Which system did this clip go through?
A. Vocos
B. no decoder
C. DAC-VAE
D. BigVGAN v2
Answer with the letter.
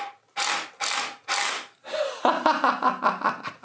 B